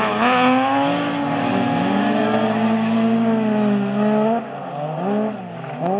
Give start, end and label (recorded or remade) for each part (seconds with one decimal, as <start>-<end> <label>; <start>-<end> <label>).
0.0-6.0 recorded